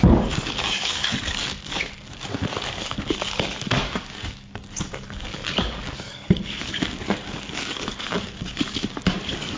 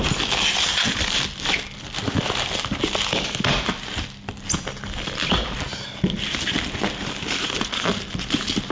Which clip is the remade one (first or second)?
first